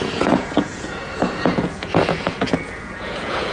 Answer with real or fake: fake